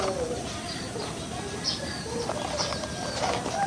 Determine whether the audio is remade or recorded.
recorded